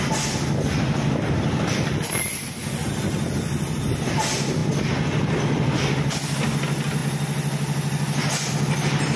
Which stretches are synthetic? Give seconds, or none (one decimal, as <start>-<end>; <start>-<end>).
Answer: none

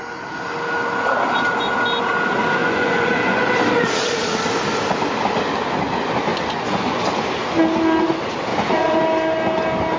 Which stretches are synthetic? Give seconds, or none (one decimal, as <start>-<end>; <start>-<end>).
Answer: 2.6-3.5; 6.3-7.0; 8.5-9.0

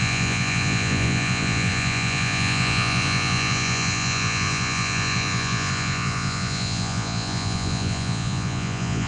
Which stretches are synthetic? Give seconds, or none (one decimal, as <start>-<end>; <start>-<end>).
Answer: 0.0-9.1

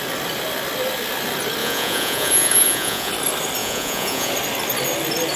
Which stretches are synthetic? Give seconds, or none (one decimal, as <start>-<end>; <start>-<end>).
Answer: 1.6-3.1; 3.6-4.3

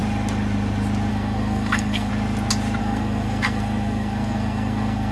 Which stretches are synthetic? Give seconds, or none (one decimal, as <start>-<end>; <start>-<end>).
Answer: 1.1-2.1; 2.8-5.1

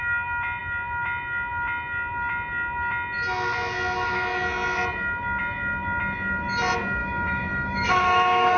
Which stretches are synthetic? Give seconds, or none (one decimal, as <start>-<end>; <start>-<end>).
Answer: 7.0-8.6